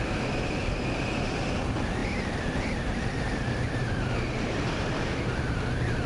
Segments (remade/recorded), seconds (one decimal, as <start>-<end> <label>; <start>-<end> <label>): 0.0-2.0 recorded; 2.0-6.1 remade